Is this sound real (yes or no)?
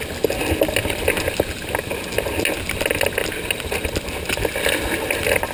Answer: yes